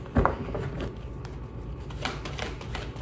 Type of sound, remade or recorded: recorded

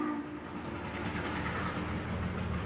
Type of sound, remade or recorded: recorded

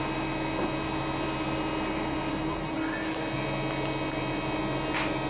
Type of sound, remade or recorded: recorded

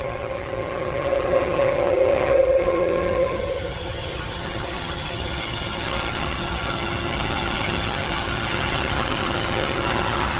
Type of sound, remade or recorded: remade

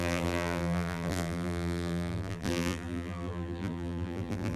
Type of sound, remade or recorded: remade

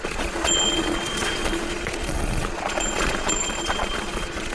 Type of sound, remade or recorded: remade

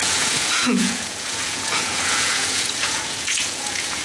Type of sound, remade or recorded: remade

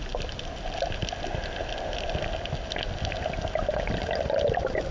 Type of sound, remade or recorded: recorded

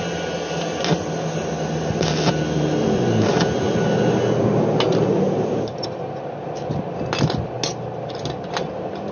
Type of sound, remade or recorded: recorded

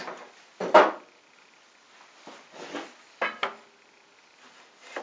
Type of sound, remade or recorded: recorded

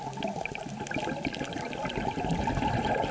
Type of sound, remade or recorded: recorded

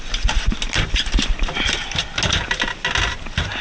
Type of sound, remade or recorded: recorded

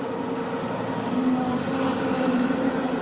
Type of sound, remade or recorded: recorded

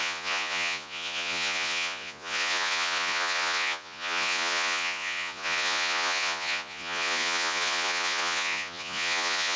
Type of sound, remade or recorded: remade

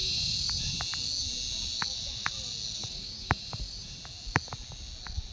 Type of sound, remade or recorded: recorded